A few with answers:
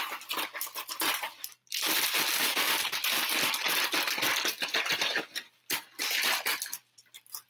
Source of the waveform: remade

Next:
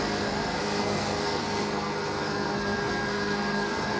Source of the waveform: remade